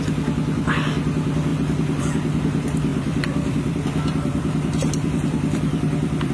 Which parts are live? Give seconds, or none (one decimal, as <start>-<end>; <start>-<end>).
0.0-2.9